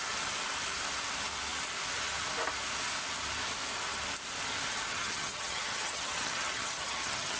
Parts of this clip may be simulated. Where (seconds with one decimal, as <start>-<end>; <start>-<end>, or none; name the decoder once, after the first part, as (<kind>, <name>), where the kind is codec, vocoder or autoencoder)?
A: 4.9-7.4 (vocoder, HiFi-GAN)